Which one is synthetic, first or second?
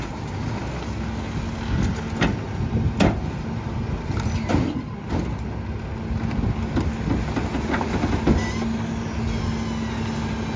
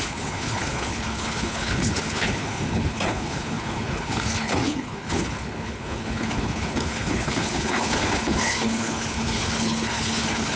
second